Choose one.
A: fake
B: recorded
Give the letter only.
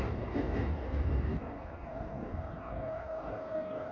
A